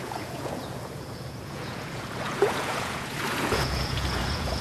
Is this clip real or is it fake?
fake